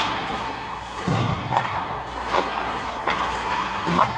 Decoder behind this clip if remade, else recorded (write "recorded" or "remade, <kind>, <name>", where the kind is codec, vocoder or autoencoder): remade, codec, SNAC